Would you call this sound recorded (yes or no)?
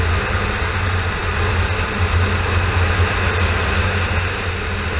yes